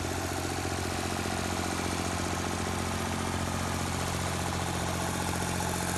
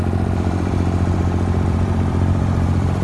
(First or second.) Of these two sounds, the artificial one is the second